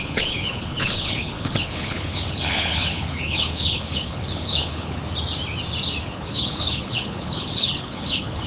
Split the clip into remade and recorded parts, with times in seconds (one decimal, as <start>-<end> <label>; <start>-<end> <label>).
0.0-5.0 remade; 5.0-6.0 recorded; 6.0-8.5 remade